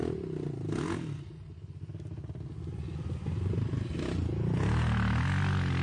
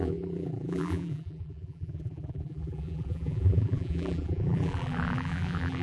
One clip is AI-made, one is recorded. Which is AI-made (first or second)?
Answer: second